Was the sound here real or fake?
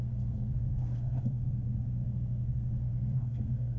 fake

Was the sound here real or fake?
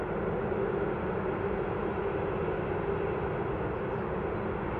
real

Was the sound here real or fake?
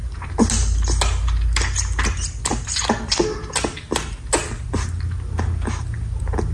real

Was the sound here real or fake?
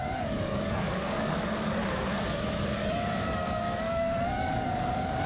fake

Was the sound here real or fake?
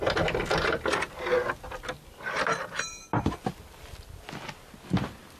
real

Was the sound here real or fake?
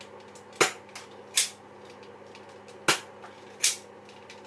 real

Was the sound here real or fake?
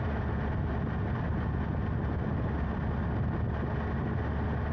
real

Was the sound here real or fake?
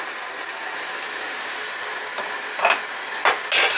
real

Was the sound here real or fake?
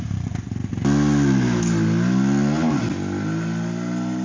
real